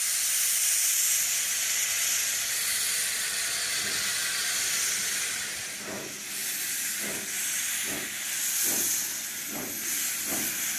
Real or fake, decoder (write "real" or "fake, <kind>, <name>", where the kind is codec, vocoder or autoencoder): real